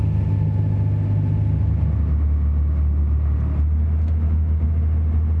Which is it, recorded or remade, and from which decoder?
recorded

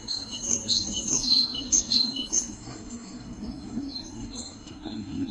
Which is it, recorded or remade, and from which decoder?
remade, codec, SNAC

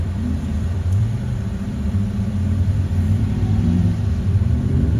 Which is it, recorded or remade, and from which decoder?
remade, vocoder, BigVGAN v2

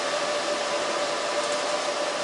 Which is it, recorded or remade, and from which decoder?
recorded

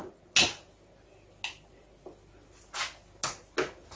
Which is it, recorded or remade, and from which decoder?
recorded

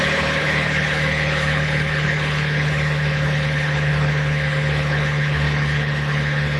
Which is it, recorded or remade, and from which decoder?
remade, codec, HILCodec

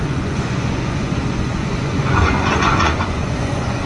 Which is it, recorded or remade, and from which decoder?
remade, vocoder, Vocos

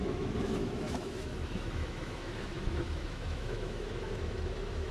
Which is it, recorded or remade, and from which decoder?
remade, autoencoder, DAC-VAE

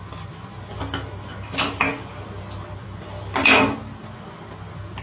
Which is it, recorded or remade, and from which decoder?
recorded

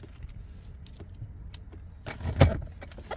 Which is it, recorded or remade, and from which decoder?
recorded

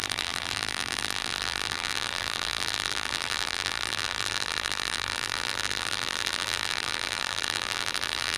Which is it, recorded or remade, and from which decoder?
remade, vocoder, BigVGAN v2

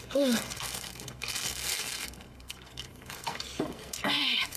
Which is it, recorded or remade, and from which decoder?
remade, codec, SNAC